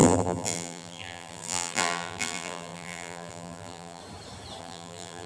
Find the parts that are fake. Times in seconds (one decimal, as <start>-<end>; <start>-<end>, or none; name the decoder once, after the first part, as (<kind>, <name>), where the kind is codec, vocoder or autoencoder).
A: 0.0-4.0 (vocoder, BigVGAN v2); 4.6-5.3